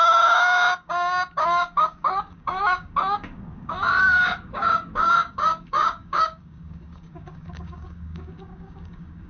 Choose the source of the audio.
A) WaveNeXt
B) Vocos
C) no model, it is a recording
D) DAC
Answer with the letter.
D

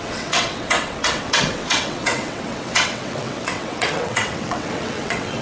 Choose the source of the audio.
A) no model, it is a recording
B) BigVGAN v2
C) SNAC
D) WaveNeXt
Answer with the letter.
D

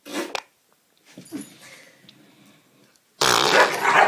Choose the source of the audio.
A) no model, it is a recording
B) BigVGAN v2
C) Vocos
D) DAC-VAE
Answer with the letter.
A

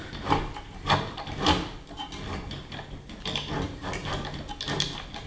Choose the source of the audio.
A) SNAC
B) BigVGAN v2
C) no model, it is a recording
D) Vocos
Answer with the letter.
C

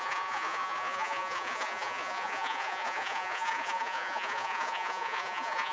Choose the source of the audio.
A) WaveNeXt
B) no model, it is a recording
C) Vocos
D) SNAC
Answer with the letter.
C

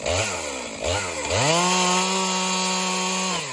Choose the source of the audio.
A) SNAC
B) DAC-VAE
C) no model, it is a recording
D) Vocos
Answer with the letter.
C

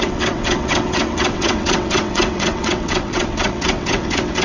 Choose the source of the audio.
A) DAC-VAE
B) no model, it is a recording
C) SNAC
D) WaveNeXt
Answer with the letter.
D